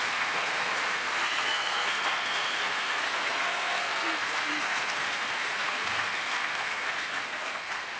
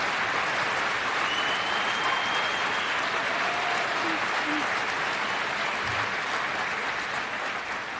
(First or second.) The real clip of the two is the second